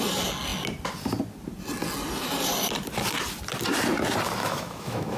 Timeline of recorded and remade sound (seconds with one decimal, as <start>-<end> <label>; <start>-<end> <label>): 0.0-4.4 recorded; 4.4-5.2 remade